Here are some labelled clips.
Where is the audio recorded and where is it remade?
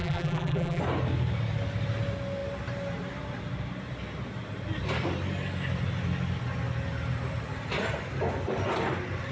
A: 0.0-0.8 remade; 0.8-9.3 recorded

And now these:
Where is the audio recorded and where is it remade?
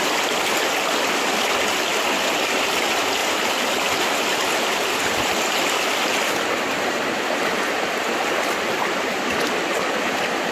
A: 0.0-3.2 recorded; 3.2-3.8 remade; 3.8-10.5 recorded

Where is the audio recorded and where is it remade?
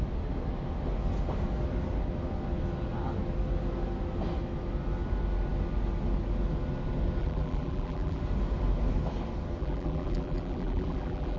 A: 0.0-7.2 recorded; 7.2-8.2 remade; 8.2-9.6 recorded; 9.6-11.4 remade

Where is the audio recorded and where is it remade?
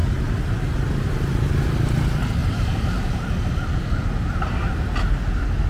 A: 0.0-2.4 recorded; 2.4-3.2 remade; 3.2-5.7 recorded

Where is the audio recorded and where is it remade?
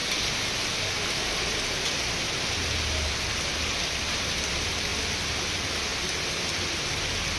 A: 0.0-7.4 recorded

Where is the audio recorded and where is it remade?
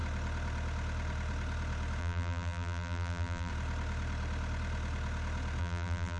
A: 0.0-2.0 recorded; 2.0-3.5 remade; 3.5-5.6 recorded; 5.6-6.2 remade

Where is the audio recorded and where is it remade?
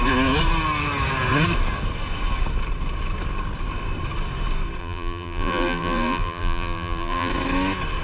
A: 0.0-4.8 recorded; 4.8-7.3 remade; 7.3-8.0 recorded